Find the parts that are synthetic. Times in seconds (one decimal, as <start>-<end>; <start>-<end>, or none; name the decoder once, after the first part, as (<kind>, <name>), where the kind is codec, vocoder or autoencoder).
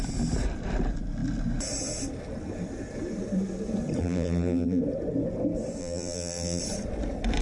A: 4.0-4.8 (vocoder, BigVGAN v2); 5.8-6.6